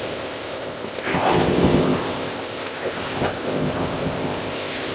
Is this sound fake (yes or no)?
yes